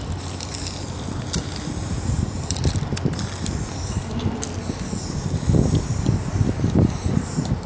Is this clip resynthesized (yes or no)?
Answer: no